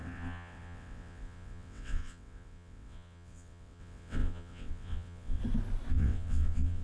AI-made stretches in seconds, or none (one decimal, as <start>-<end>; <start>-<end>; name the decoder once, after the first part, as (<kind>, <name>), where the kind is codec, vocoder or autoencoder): 0.0-5.4 (vocoder, WaveNeXt); 5.9-6.8